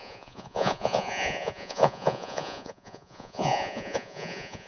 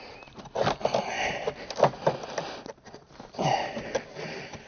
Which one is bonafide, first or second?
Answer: second